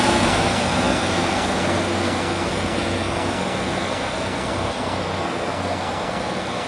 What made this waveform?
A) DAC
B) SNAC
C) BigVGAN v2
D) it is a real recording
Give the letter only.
B